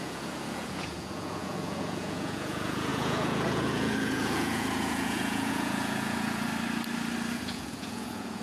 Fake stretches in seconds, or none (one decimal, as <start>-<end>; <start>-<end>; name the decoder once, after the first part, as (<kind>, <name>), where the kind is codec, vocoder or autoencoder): 0.0-6.5 (vocoder, Vocos); 7.3-8.4